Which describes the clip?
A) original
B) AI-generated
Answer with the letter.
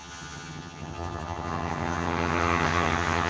B